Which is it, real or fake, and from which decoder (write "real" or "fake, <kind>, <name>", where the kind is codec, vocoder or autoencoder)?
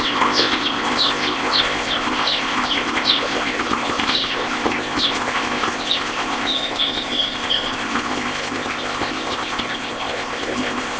fake, codec, ZipCodec